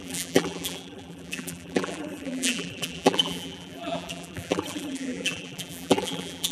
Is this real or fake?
fake